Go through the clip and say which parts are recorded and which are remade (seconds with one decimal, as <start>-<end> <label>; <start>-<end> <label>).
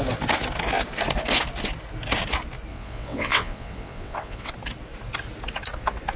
0.0-2.7 recorded; 2.7-4.5 remade; 4.5-6.2 recorded